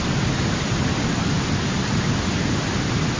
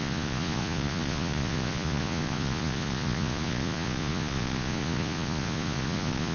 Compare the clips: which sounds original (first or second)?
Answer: first